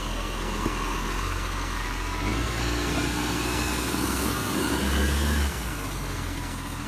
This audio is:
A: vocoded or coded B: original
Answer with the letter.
A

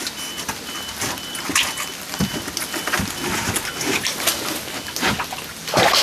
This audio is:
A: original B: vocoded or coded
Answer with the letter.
A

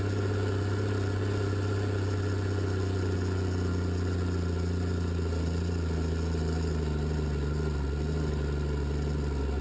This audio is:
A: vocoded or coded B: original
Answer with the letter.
B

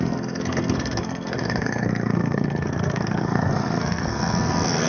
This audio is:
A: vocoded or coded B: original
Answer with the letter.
A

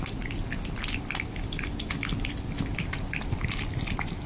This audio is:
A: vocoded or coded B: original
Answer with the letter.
B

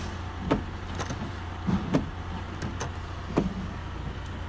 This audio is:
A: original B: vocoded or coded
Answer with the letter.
A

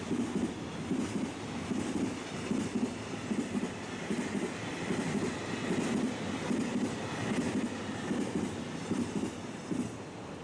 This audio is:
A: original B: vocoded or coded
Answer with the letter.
A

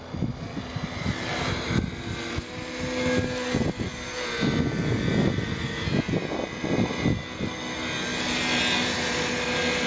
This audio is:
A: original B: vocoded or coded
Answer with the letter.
A